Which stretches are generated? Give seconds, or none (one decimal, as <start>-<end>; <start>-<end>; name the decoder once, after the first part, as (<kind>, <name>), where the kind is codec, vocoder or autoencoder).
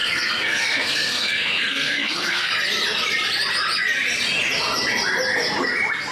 0.0-2.5 (codec, SNAC)